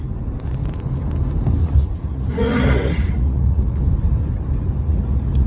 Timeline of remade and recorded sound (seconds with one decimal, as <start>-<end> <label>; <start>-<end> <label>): 0.0-1.6 recorded; 1.6-3.8 remade; 3.8-4.8 recorded; 4.8-5.5 remade